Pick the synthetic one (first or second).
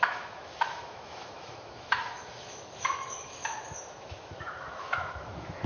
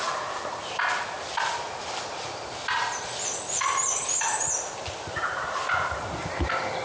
first